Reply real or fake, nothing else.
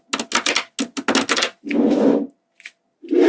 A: real